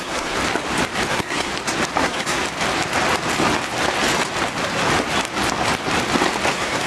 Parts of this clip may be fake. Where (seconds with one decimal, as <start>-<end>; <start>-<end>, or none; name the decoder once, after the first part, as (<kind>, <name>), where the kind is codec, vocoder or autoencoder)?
0.0-0.4 (codec, SNAC); 1.1-1.5; 2.0-2.4; 6.5-6.9